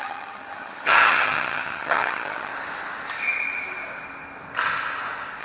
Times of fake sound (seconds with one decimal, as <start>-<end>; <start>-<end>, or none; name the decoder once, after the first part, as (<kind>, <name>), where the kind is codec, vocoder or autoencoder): 0.0-2.5 (vocoder, HiFi-GAN)